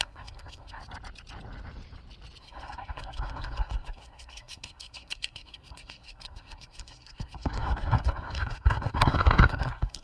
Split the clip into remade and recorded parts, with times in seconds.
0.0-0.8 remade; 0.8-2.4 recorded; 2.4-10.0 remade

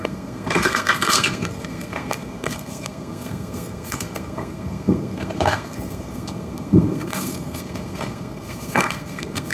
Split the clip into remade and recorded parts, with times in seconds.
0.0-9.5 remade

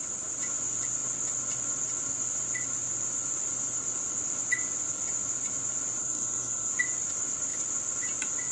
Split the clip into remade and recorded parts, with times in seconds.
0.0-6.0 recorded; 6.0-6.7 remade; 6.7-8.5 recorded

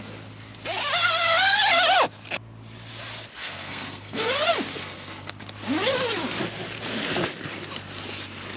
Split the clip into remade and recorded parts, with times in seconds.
0.0-3.4 recorded; 3.4-4.3 remade; 4.3-4.7 recorded; 4.7-5.3 remade; 5.3-8.6 recorded

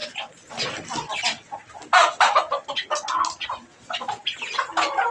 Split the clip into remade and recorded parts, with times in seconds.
0.0-5.1 recorded